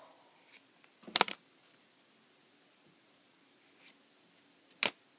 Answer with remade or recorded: recorded